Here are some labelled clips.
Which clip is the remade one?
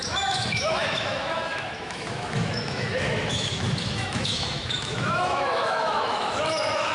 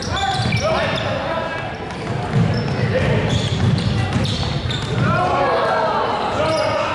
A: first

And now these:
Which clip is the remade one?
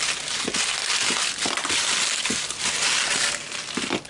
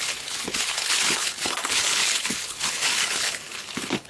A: second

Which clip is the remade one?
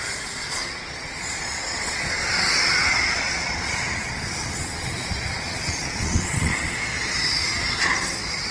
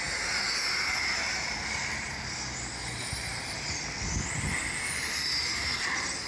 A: first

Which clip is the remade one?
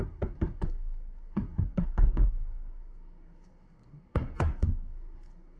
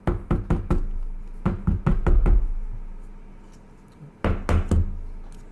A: first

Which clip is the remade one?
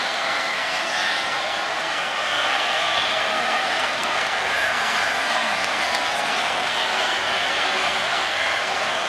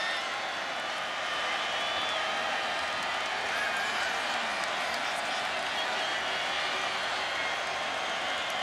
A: first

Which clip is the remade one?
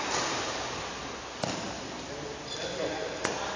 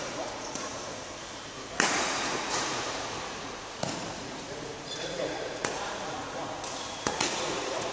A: second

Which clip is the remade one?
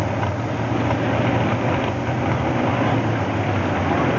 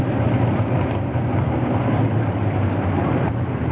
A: second